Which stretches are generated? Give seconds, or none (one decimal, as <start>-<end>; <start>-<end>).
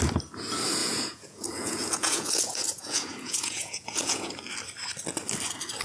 0.8-4.3